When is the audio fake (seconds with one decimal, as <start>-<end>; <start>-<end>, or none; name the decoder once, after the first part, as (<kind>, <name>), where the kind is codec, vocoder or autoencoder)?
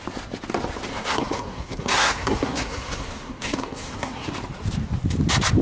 0.9-4.3 (codec, SNAC)